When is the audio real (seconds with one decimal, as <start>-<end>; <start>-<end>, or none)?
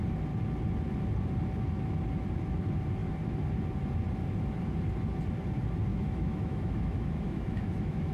0.0-5.9